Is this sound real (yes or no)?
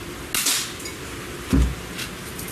yes